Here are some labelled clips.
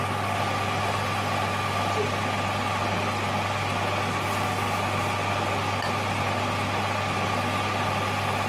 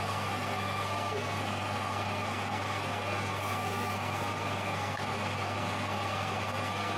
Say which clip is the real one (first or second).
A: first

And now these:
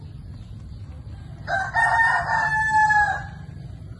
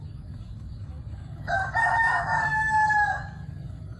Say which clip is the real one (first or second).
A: first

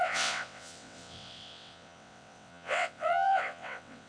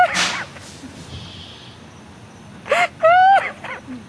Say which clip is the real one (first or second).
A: second